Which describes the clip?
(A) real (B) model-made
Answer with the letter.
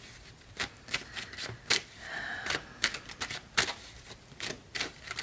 A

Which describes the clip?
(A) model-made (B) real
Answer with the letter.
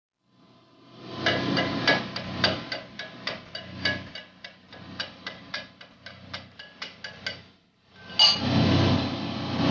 B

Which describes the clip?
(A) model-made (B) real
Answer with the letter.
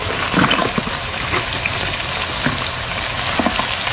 B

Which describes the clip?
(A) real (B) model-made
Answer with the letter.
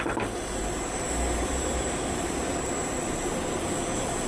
B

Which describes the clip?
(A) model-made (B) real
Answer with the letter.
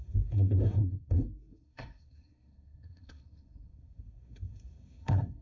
A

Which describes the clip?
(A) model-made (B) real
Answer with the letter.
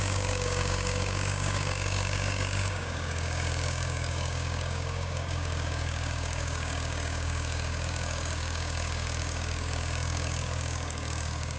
A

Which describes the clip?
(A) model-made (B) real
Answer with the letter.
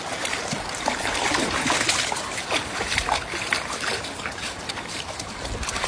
B